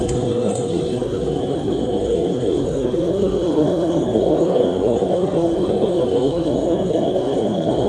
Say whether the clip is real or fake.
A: fake